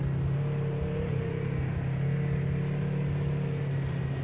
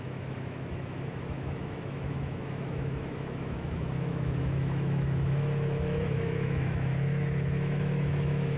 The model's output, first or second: second